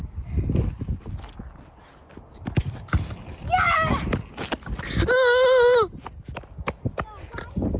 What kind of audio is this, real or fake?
real